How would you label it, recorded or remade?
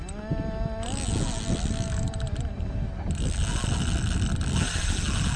recorded